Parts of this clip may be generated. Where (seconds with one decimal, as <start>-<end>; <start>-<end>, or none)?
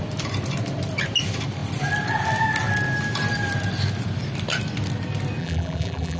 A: 5.4-6.2